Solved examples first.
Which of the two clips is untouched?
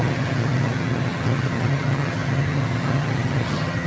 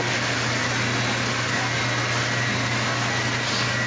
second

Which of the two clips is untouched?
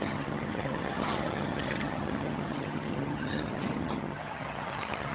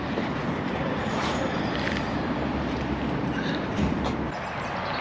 second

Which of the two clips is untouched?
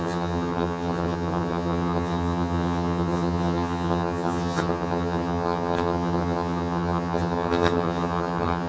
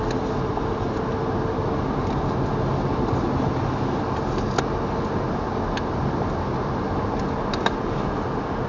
second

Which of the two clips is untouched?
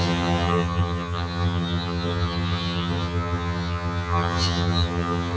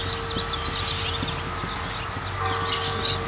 second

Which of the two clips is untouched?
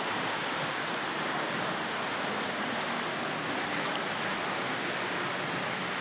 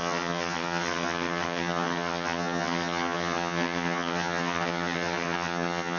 first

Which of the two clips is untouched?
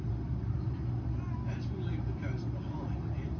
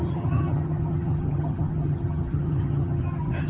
first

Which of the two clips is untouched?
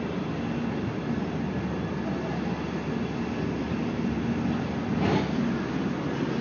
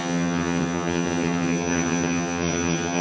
first